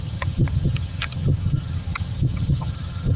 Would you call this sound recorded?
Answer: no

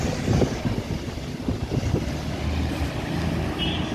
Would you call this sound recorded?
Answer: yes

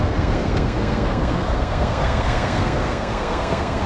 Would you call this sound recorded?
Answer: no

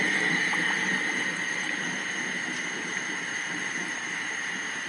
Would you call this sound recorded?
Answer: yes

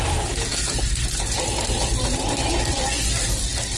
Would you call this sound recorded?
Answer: yes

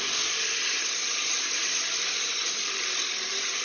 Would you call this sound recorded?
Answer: yes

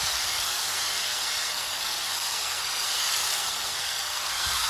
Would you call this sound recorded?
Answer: no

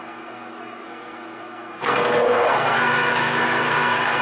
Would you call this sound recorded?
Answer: no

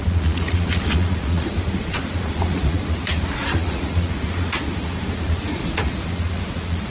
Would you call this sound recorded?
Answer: no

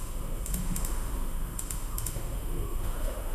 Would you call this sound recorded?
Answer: no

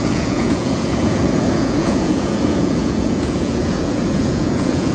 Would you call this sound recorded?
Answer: no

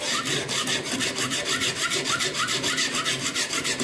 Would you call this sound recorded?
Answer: yes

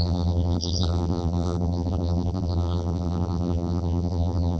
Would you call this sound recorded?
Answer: no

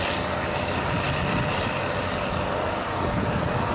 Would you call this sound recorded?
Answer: no